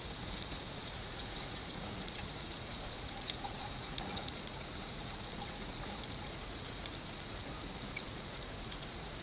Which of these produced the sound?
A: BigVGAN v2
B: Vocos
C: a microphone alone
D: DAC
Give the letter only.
B